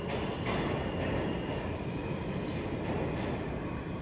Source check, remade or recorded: recorded